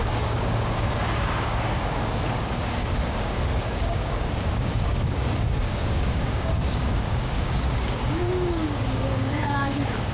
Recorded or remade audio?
remade